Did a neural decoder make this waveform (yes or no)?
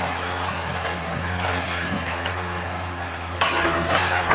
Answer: yes